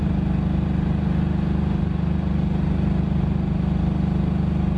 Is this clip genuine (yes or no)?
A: yes